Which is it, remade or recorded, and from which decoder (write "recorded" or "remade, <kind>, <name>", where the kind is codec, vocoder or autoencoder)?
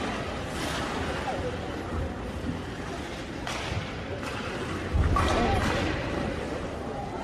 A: recorded